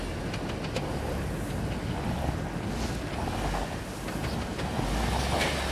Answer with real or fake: real